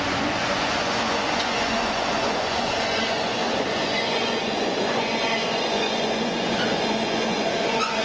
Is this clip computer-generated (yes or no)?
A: yes